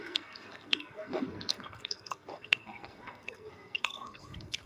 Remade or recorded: remade